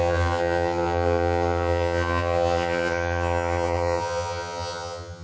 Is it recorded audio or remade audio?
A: remade